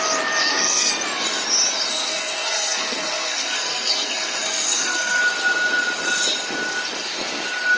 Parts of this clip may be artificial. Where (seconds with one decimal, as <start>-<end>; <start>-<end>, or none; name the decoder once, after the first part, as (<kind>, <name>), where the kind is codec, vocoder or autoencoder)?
0.4-0.9 (codec, SNAC); 1.9-5.2